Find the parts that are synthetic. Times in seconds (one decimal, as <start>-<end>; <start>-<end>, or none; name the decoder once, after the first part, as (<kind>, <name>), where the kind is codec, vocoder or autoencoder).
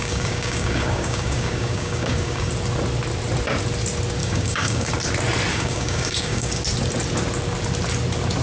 0.0-2.5 (codec, DAC); 4.2-4.9; 5.5-6.6